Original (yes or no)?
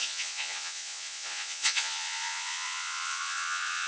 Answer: no